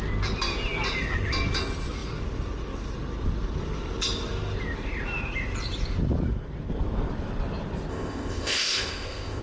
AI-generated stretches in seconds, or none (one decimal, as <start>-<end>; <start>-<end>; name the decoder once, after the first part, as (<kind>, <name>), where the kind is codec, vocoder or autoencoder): 7.9-9.4 (codec, ZipCodec)